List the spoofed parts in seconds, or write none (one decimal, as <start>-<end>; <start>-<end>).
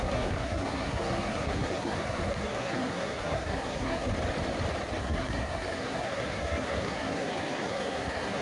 0.0-4.1; 5.0-8.4